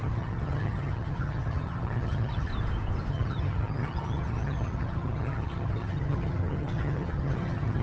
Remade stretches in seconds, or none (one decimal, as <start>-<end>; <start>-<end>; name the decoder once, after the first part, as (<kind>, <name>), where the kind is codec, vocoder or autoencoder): 0.0-2.5 (vocoder, HiFi-GAN); 3.1-7.8

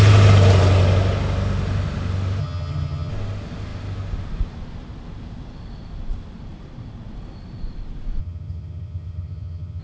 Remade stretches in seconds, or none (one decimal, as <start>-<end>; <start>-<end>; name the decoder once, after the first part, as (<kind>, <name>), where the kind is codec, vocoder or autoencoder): 2.4-3.1 (vocoder, HiFi-GAN); 8.2-9.8

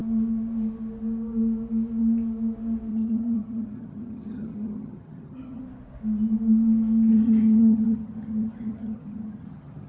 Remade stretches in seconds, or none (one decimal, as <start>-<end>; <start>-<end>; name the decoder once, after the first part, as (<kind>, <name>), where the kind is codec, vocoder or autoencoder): 2.9-5.6 (vocoder, HiFi-GAN); 7.1-9.9

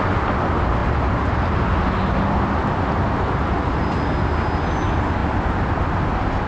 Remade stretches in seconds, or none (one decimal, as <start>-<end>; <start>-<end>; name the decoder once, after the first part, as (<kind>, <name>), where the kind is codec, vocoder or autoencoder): none

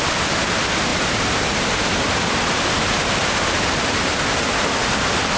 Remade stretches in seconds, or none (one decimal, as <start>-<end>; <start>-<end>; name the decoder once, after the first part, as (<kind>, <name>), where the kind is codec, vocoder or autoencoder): none

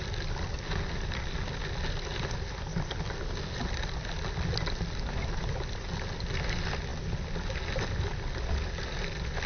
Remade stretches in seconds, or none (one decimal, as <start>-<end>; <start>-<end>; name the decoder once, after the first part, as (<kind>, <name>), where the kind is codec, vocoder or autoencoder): none

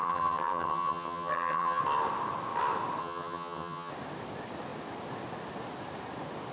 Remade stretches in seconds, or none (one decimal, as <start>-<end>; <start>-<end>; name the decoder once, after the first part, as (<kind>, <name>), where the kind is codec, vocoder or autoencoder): 0.0-1.8 (vocoder, HiFi-GAN); 3.0-3.9